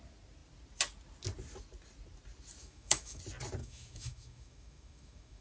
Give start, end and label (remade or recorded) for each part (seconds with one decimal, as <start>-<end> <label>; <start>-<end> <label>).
0.0-2.6 recorded; 2.6-3.2 remade; 3.2-3.6 recorded; 3.6-5.4 remade